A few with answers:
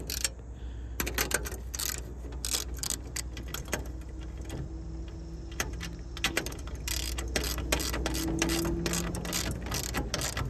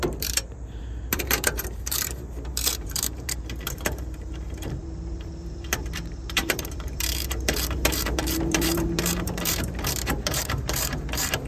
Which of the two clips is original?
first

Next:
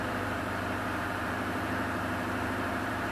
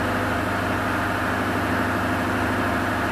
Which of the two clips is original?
second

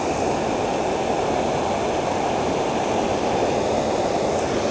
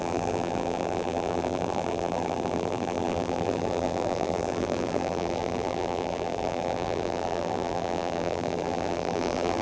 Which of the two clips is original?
first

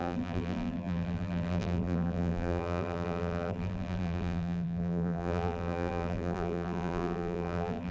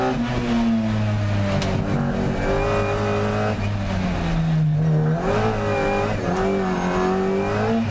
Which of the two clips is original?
second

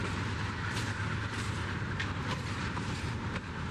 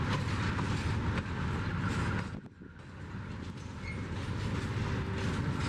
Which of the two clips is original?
second